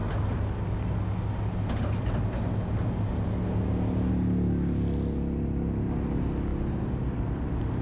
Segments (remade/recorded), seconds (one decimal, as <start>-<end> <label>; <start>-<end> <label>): 0.0-7.8 recorded